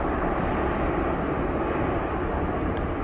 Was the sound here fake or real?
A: real